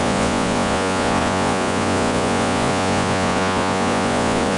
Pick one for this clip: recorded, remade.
remade